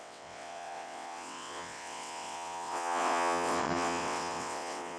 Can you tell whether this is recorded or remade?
remade